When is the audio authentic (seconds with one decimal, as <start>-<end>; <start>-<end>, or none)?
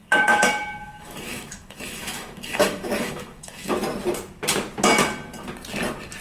3.7-6.2